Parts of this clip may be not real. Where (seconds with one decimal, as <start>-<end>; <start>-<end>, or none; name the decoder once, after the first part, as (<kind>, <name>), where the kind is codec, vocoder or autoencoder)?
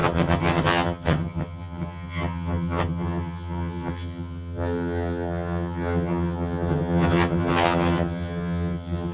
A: 0.0-9.1 (vocoder, HiFi-GAN)